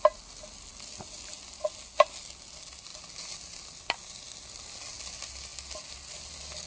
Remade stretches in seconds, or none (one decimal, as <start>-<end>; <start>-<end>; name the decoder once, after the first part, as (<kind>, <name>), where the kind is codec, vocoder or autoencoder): none